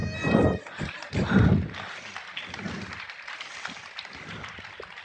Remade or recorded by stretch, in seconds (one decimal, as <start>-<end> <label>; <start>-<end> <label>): 0.0-5.0 recorded